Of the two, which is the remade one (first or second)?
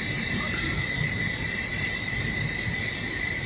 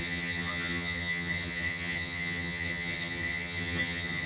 second